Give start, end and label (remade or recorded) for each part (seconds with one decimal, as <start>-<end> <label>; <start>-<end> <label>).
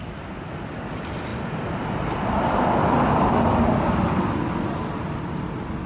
0.0-5.9 recorded